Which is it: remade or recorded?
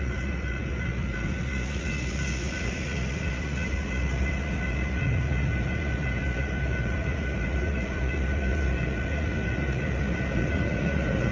remade